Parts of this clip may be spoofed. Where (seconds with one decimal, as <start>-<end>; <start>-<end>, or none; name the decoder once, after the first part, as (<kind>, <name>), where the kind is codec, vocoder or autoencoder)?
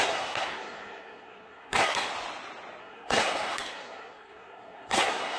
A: 0.0-2.1 (codec, SNAC); 2.8-5.4